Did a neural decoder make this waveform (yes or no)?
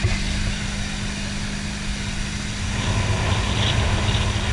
no